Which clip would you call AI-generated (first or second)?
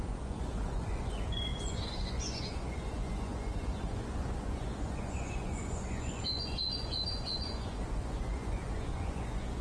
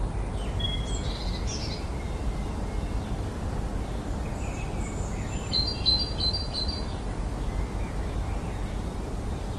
first